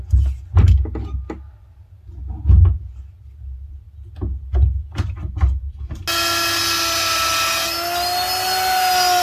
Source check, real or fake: real